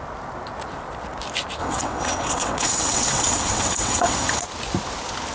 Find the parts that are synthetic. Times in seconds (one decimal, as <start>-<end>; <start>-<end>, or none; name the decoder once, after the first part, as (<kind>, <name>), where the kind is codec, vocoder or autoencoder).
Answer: 1.6-4.4 (vocoder, WaveNeXt)